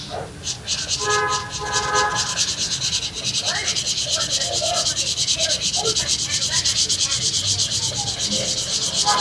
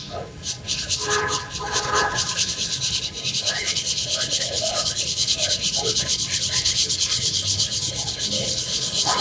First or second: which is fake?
second